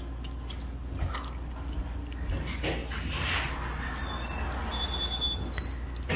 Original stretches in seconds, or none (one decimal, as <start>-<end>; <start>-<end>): 0.0-6.2